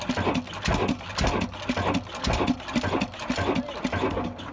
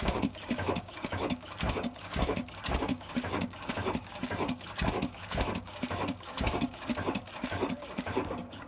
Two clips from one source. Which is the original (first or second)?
first